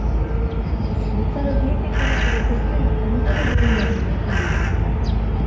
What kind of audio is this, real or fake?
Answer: real